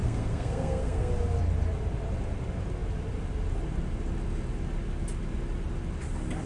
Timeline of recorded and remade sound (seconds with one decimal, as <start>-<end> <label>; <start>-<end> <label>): 0.0-1.1 remade; 1.1-6.5 recorded